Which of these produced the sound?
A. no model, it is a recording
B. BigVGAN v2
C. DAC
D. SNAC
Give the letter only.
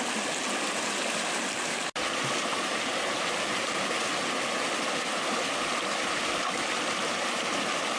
A